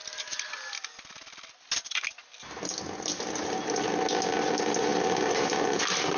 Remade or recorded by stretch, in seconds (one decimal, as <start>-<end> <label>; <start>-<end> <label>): 0.0-6.2 recorded